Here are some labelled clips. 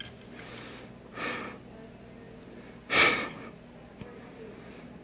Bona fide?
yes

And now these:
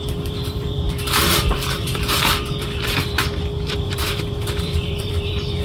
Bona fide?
no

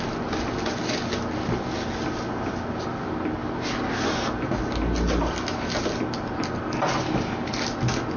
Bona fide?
yes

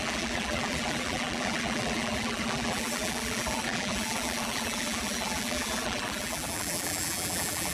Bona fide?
no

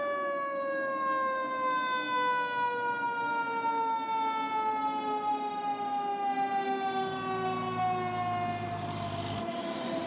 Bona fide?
yes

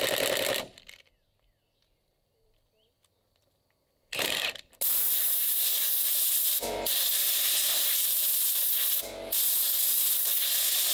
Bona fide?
yes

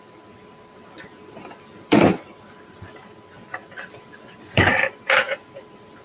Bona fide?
no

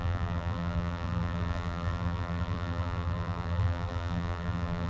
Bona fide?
no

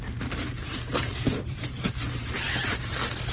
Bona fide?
no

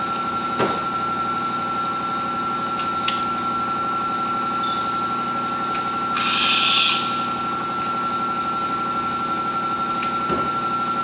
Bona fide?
yes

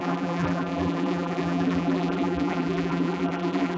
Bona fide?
no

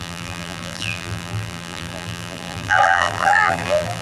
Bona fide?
no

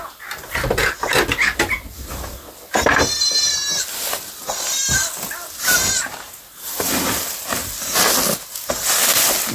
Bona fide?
yes